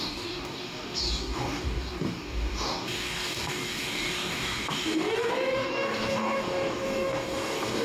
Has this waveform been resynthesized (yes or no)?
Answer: yes